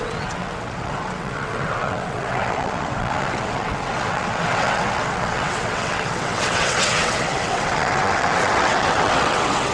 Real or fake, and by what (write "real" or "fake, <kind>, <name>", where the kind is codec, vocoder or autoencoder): fake, vocoder, WaveNeXt